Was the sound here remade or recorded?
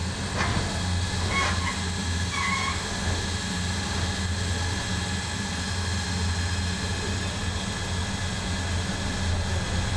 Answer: recorded